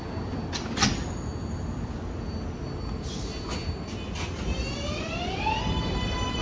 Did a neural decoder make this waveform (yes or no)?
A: no